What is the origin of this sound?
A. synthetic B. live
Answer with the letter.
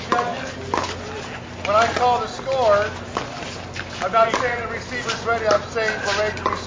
B